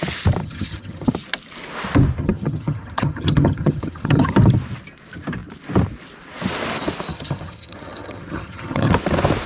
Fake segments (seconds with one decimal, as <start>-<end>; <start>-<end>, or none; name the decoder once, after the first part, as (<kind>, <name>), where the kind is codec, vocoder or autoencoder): 0.4-1.1 (vocoder, HiFi-GAN); 2.2-4.3; 7.1-8.9